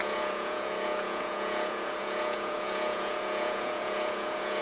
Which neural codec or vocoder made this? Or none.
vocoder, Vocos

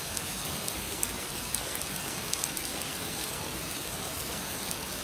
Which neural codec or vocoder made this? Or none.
codec, SNAC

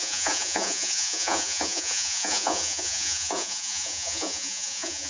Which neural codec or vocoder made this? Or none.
vocoder, Vocos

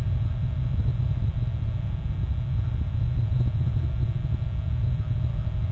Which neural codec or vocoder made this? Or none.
none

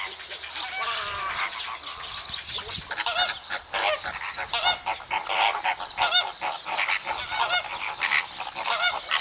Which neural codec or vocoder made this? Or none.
none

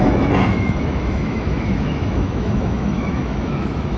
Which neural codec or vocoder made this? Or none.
autoencoder, DAC-VAE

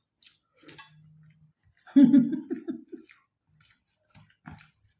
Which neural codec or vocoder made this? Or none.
none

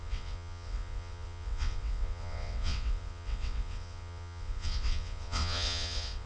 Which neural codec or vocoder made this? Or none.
vocoder, WaveNeXt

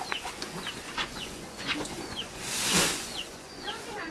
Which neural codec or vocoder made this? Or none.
vocoder, Vocos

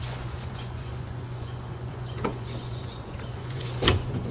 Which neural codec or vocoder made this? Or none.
vocoder, Vocos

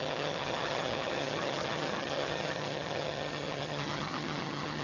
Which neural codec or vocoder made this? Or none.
vocoder, HiFi-GAN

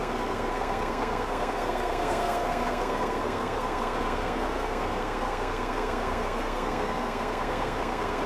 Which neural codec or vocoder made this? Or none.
codec, SNAC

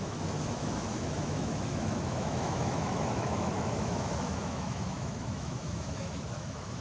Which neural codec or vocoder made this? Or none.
autoencoder, DAC-VAE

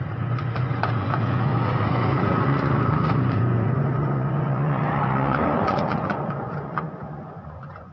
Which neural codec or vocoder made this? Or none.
vocoder, Vocos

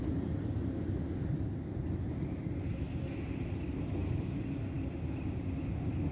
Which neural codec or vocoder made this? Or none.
none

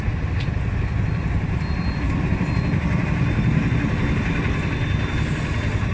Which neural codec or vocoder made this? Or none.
none